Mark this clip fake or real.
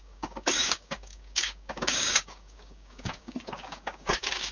fake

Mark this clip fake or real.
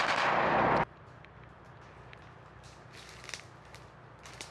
real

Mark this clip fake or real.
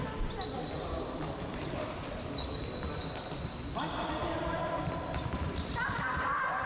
fake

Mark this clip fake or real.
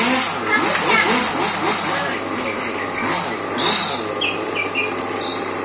real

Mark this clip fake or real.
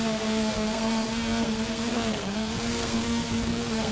fake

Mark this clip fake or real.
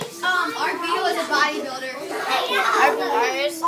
real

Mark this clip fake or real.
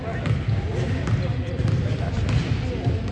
real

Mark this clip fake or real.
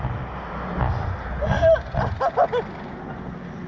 real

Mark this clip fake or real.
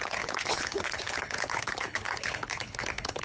fake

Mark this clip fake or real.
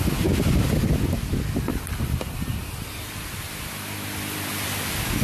real